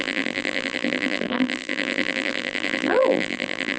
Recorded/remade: remade